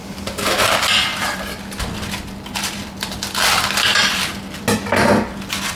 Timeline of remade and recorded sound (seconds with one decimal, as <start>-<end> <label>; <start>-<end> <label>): 0.0-1.1 recorded; 1.1-4.6 remade; 4.6-5.8 recorded